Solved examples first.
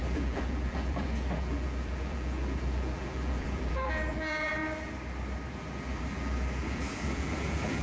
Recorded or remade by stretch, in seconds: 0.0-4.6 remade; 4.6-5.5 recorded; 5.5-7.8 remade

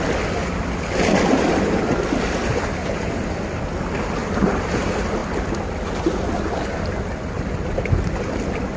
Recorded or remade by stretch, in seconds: 0.0-2.5 recorded; 2.5-3.2 remade; 3.2-4.2 recorded; 4.2-4.8 remade; 4.8-8.8 recorded